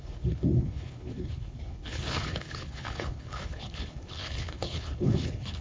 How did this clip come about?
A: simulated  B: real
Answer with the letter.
A